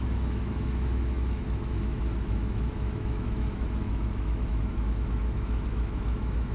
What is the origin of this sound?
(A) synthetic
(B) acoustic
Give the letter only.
A